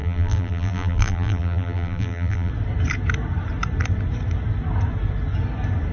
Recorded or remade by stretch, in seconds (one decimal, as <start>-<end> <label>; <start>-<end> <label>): 0.0-2.5 remade; 2.5-5.9 recorded